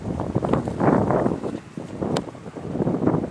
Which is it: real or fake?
real